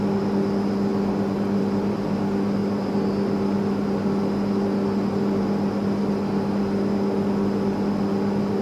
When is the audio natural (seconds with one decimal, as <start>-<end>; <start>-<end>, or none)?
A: 0.0-8.6